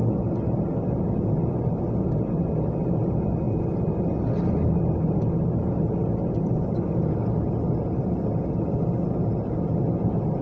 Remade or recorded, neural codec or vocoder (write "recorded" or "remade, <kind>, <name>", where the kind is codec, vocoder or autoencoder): recorded